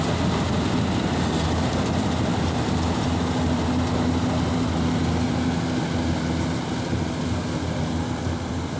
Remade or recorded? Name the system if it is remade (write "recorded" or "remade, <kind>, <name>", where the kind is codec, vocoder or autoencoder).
recorded